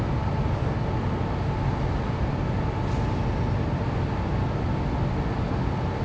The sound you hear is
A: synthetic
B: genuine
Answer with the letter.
B